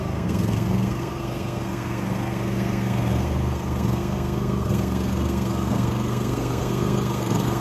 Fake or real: fake